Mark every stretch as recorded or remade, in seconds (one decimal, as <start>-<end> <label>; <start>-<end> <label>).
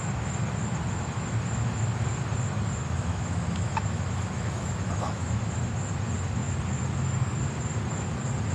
0.0-2.8 recorded; 2.8-5.4 remade; 5.4-8.5 recorded